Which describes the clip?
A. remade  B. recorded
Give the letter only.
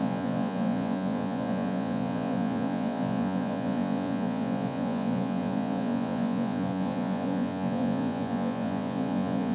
A